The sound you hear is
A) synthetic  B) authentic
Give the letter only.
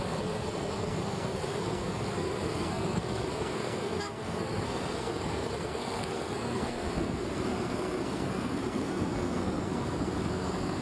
A